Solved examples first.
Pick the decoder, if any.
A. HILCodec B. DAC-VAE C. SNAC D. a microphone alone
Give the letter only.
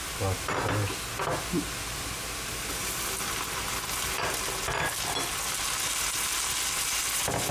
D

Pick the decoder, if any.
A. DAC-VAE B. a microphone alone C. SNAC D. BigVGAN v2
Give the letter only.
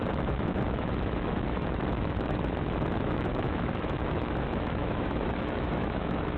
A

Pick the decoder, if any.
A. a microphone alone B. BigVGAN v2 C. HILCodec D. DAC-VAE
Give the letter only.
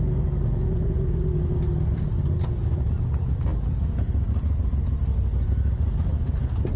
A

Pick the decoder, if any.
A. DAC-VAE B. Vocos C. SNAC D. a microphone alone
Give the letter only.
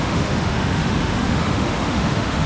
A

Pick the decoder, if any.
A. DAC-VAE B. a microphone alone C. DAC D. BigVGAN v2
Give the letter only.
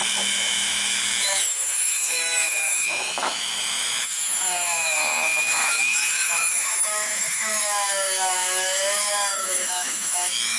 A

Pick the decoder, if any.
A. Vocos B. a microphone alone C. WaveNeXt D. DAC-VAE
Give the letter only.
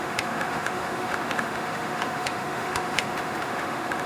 D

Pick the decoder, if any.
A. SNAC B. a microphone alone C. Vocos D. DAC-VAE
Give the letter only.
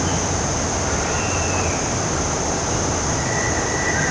B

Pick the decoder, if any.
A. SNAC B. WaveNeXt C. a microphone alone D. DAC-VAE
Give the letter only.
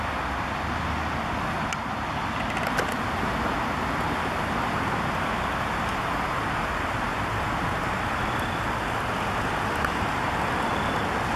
C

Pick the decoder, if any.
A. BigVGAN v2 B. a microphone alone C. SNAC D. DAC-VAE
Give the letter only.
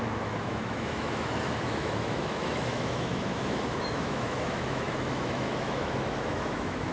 D